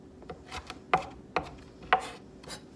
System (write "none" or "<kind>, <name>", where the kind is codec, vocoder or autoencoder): none